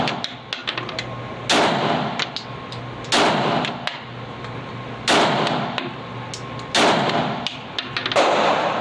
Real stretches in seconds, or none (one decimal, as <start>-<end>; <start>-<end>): 0.0-8.8